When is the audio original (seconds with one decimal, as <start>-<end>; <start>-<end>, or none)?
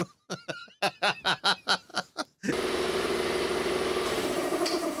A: 0.0-1.9